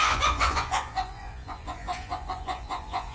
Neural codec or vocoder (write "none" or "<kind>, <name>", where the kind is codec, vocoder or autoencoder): vocoder, Vocos